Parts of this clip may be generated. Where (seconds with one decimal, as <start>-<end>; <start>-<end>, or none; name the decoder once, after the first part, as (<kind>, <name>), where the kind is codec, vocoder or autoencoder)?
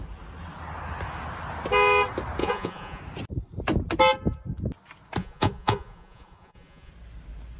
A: 2.4-3.0 (vocoder, Vocos); 5.2-6.9